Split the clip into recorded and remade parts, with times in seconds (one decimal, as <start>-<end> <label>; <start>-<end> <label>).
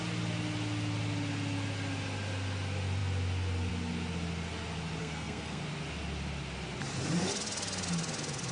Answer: 0.0-5.0 recorded; 5.0-5.6 remade; 5.6-8.5 recorded